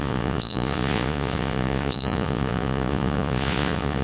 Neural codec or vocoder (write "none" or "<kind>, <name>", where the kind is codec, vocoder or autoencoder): vocoder, Vocos